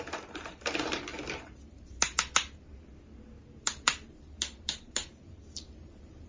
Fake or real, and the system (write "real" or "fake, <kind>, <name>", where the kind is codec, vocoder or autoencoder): fake, vocoder, BigVGAN v2